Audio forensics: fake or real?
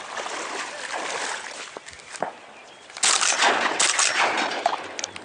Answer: real